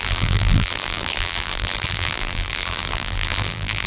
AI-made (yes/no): yes